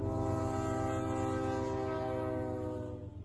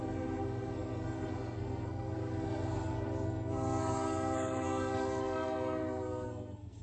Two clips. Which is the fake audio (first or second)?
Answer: second